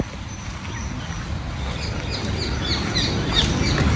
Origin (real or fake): real